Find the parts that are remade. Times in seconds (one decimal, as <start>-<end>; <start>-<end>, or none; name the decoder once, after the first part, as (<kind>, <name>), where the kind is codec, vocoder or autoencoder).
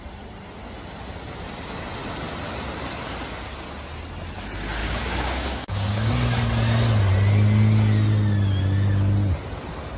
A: 4.8-6.1 (codec, DAC)